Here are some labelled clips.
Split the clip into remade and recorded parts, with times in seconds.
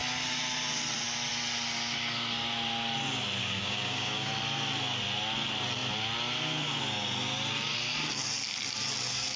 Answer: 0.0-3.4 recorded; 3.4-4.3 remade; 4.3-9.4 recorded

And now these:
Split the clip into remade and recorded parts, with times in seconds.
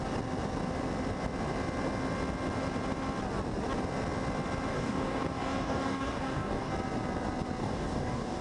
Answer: 0.0-4.7 recorded; 4.7-6.7 remade; 6.7-7.6 recorded; 7.6-8.4 remade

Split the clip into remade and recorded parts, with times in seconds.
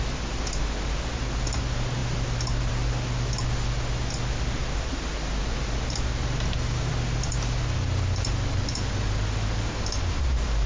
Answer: 0.0-10.7 recorded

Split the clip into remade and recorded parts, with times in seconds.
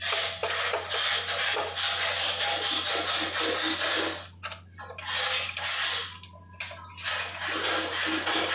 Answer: 0.0-8.5 recorded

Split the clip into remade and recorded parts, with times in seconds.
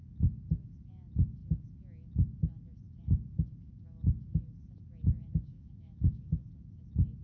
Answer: 0.0-5.5 recorded; 5.5-6.5 remade; 6.5-7.2 recorded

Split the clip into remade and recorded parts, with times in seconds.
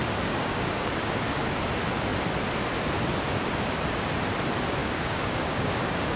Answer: 0.0-1.4 remade; 1.4-4.8 recorded; 4.8-6.2 remade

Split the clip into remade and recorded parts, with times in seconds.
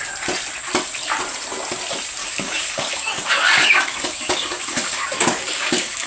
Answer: 0.0-2.2 recorded; 2.2-6.1 remade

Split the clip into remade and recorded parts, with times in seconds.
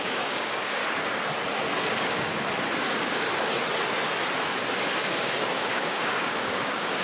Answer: 0.0-0.8 remade; 0.8-1.9 recorded; 1.9-2.3 remade; 2.3-2.9 recorded; 2.9-3.3 remade; 3.3-4.8 recorded; 4.8-7.0 remade